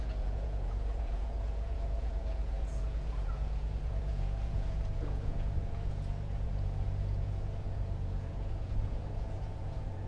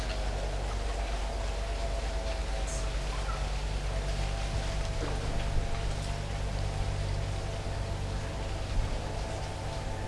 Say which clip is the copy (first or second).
first